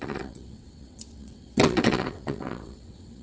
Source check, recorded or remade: remade